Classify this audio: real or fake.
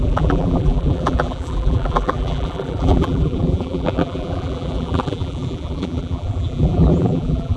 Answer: fake